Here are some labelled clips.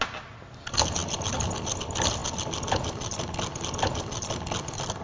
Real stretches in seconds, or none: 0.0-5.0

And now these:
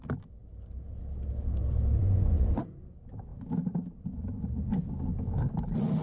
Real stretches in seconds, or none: 0.0-2.0; 2.5-6.0

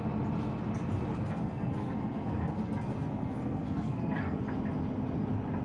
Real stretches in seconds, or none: 0.0-1.1; 4.4-5.6

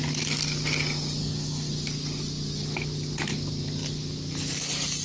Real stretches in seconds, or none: 0.0-1.2; 1.7-5.0

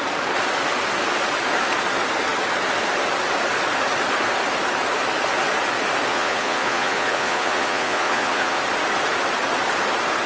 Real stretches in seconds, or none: 0.0-6.1; 8.6-10.3

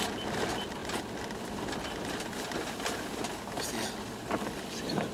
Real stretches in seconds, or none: 0.0-5.1